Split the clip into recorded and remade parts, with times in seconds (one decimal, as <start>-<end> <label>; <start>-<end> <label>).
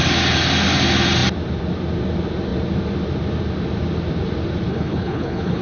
0.0-4.7 recorded; 4.7-5.6 remade